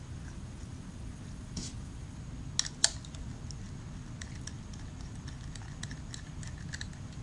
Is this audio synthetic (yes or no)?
no